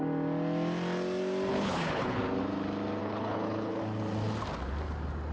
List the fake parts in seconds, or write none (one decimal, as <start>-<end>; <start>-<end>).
1.5-2.2; 3.0-3.8